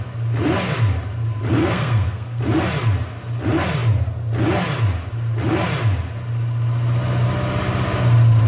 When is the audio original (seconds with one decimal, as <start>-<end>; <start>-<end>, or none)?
0.0-1.6; 2.4-8.5